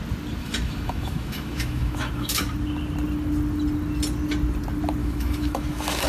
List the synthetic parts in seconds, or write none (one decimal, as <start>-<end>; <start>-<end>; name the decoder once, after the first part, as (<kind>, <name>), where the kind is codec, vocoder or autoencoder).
0.4-2.4 (autoencoder, DAC-VAE); 5.0-6.1